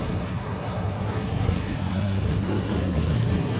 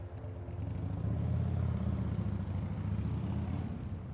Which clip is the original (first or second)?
second